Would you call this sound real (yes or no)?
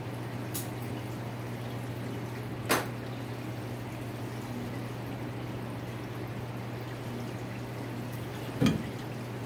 yes